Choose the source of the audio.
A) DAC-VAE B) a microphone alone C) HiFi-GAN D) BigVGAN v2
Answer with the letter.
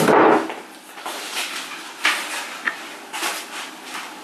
B